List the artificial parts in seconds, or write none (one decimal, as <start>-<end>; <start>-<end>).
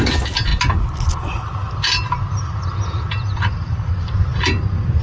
none